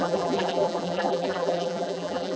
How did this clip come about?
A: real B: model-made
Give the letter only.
B